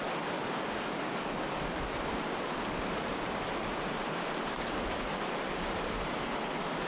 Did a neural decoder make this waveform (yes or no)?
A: no